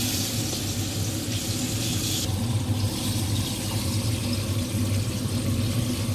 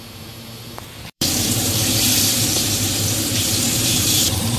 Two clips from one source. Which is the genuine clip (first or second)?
first